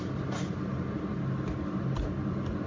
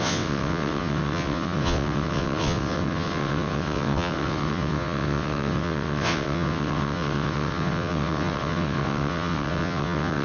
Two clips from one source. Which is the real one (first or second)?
first